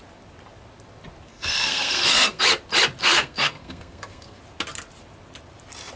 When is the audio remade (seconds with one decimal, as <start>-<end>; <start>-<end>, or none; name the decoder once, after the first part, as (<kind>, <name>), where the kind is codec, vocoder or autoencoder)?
1.3-2.4 (codec, SNAC); 3.0-4.4